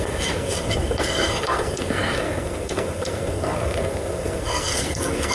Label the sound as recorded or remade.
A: remade